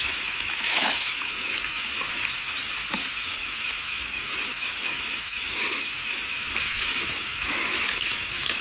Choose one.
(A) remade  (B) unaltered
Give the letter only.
A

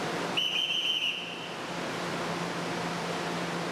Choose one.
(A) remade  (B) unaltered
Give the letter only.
B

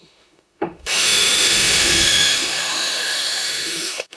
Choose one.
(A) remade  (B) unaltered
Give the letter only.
A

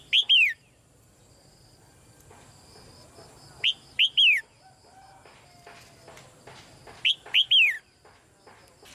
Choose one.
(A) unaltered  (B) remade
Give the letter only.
A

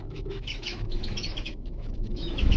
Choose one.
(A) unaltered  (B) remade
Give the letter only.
B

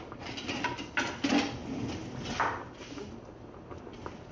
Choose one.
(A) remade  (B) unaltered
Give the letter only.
B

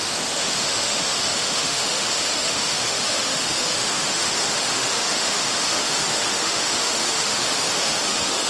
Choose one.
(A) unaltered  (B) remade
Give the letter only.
B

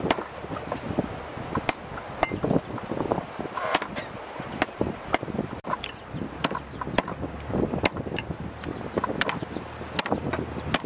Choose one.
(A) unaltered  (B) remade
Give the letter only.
A